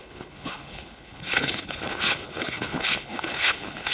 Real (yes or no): no